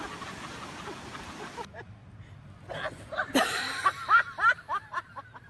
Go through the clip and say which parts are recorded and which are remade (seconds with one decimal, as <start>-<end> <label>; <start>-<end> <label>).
0.0-5.5 recorded